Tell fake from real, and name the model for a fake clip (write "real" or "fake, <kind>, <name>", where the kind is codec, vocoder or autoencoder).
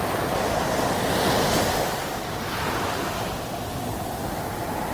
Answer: real